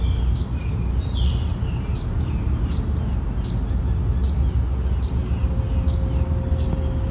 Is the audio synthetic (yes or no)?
no